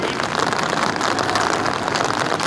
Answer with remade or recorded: recorded